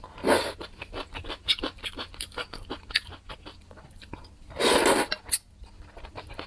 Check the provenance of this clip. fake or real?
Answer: real